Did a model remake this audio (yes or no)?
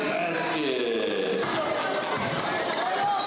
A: no